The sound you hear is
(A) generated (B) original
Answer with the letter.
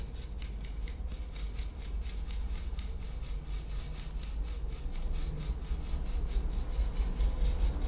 B